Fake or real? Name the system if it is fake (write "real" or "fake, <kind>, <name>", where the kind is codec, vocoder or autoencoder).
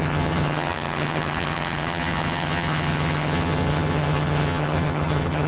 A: fake, vocoder, HiFi-GAN